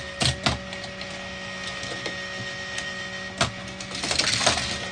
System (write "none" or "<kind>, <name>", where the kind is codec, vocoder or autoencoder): none